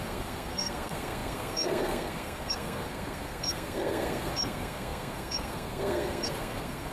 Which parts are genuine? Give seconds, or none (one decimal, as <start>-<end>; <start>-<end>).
none